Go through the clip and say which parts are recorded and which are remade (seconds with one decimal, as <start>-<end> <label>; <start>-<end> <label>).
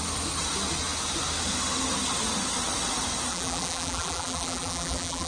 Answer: 0.0-3.3 recorded; 3.3-5.3 remade